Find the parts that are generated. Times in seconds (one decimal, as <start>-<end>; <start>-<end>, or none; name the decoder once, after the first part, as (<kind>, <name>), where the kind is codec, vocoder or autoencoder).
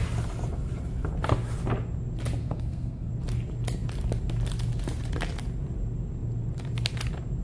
2.4-3.1 (codec, SNAC)